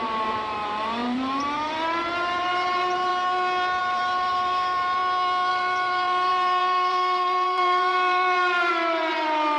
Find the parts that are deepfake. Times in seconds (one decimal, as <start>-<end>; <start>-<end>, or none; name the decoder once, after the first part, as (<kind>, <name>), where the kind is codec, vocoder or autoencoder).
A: 0.0-3.1 (vocoder, BigVGAN v2); 3.8-5.0; 5.5-9.6